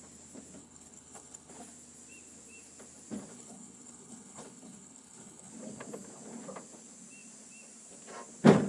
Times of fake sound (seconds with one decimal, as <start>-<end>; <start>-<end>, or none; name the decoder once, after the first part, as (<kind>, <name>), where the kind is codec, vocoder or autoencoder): 0.6-1.5 (codec, HILCodec); 3.3-5.5